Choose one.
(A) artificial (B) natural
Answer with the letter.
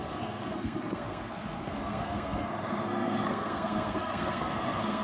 A